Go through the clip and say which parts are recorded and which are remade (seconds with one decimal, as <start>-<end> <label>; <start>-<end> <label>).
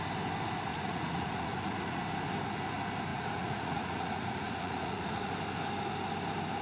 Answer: 0.0-0.7 recorded; 0.7-2.0 remade; 2.0-3.1 recorded; 3.1-5.3 remade; 5.3-6.6 recorded